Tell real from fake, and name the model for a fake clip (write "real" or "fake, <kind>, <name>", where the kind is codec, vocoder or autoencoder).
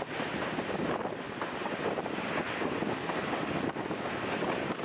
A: real